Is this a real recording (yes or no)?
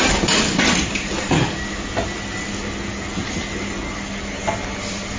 yes